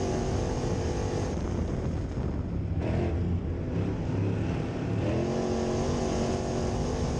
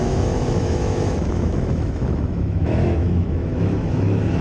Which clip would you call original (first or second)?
first